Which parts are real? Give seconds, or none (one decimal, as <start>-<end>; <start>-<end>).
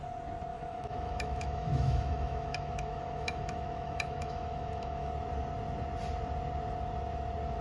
0.0-0.5; 5.1-7.6